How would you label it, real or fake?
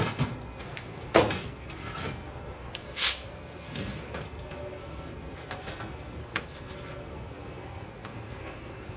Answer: fake